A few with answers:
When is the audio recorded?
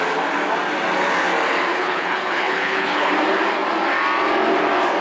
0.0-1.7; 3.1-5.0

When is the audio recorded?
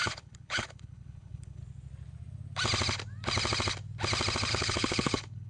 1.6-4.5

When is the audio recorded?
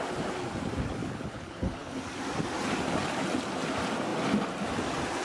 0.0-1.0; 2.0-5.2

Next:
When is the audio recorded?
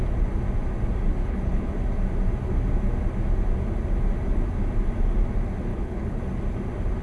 0.0-1.2; 1.7-5.7; 6.2-7.0